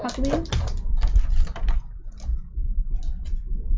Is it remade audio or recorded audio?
recorded